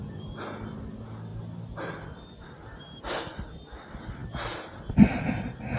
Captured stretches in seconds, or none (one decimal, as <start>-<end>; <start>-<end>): 0.0-5.8